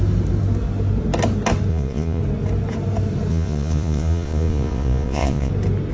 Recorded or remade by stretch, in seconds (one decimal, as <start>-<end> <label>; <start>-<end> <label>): 0.0-1.7 recorded; 1.7-2.2 remade; 2.2-3.3 recorded; 3.3-5.5 remade; 5.5-5.9 recorded